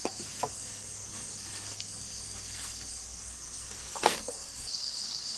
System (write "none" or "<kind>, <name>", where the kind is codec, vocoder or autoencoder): codec, SNAC